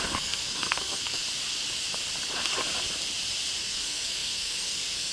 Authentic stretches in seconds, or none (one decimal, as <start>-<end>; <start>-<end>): 1.2-3.6